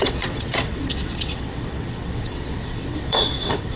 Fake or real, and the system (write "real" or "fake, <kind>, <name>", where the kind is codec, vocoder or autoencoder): fake, vocoder, WaveNeXt